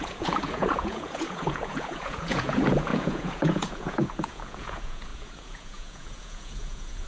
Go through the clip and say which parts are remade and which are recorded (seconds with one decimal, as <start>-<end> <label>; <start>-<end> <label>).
0.0-7.1 remade